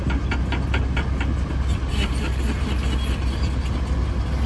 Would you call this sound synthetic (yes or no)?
no